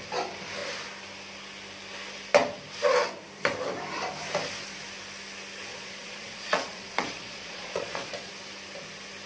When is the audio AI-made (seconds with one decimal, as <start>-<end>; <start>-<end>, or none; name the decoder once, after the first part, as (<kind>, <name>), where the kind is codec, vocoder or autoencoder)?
5.7-8.3 (vocoder, Vocos)